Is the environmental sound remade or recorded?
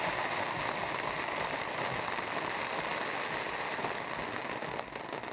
recorded